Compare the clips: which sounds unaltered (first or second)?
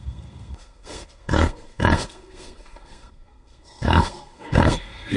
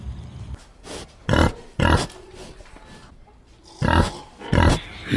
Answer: second